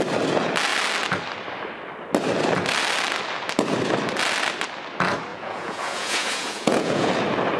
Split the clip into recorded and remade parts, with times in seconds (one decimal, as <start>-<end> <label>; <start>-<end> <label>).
0.0-5.3 recorded; 5.3-7.1 remade; 7.1-7.6 recorded